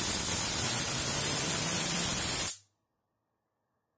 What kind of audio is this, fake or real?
real